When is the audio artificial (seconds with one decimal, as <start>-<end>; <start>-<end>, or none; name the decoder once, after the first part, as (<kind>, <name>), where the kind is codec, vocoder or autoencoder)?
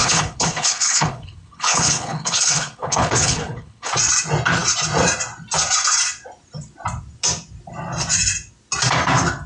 0.0-3.9 (codec, HILCodec)